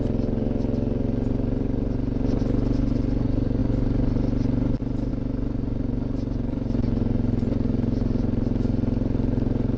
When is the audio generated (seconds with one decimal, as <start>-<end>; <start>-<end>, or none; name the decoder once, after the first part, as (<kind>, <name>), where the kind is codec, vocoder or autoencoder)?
none